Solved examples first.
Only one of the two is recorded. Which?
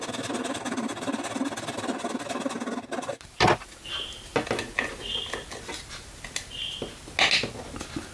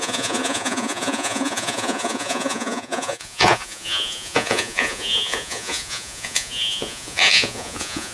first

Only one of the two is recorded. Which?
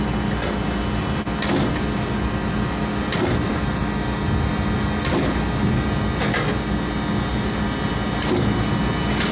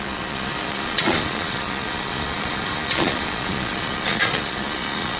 first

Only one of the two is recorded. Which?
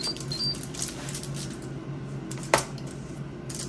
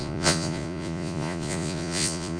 first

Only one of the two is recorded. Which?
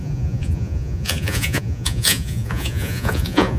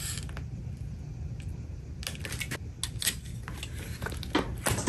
second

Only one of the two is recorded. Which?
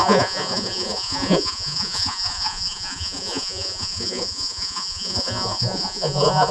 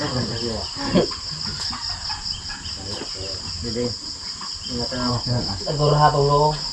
second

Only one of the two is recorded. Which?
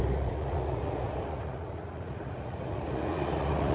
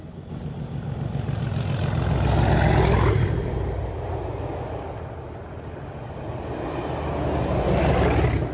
second